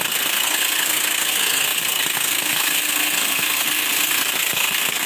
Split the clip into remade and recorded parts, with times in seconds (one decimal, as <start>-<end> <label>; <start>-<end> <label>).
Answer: 0.0-5.1 remade